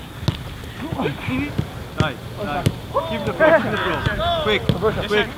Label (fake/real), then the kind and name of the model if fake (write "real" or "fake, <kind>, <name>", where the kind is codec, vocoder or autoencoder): real